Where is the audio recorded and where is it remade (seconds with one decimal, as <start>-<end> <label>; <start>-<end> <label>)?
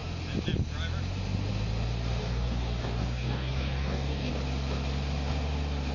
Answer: 0.0-2.2 recorded; 2.2-4.3 remade; 4.3-5.9 recorded